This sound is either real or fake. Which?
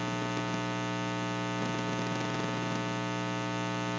real